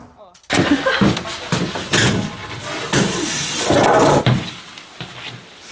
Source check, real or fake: real